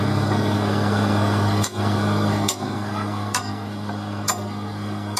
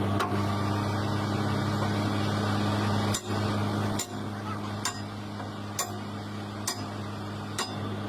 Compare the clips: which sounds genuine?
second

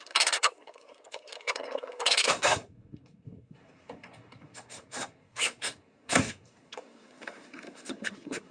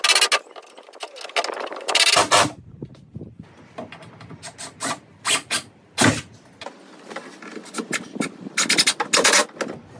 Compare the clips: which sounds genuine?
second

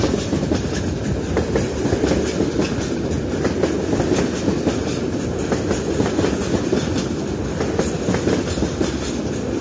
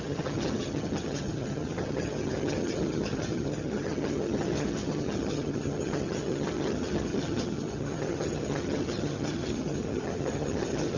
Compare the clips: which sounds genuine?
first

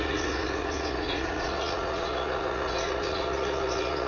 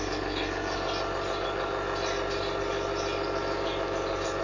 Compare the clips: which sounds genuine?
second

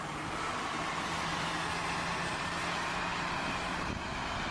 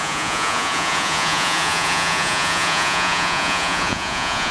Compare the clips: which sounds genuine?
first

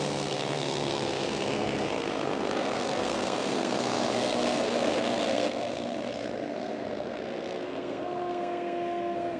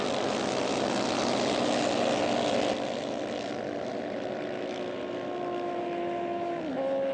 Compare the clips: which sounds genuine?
second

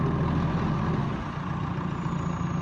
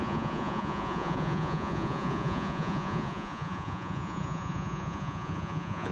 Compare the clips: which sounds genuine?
first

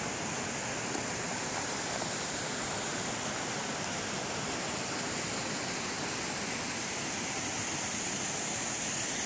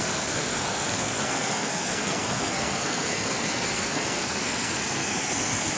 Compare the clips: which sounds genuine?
first